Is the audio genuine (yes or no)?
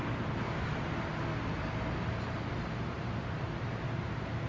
yes